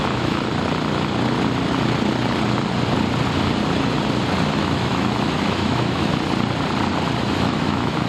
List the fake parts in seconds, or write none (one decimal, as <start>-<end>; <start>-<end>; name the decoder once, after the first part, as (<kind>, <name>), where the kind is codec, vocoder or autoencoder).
0.0-0.5 (autoencoder, DAC-VAE); 4.6-6.1; 7.2-8.1